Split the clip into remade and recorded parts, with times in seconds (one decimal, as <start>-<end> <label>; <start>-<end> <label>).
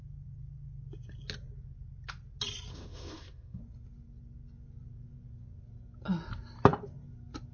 0.0-2.7 recorded; 2.7-3.6 remade; 3.6-7.5 recorded